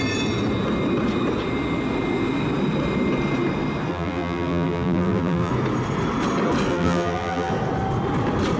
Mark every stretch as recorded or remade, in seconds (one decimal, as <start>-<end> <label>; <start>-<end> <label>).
0.0-3.9 recorded; 3.9-5.5 remade; 5.5-6.7 recorded; 6.7-7.5 remade; 7.5-8.6 recorded